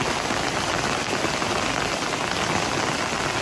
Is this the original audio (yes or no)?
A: yes